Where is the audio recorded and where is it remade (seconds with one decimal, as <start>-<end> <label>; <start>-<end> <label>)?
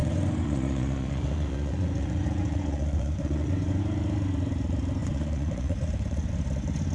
0.0-3.8 remade; 3.8-5.0 recorded; 5.0-6.3 remade; 6.3-6.9 recorded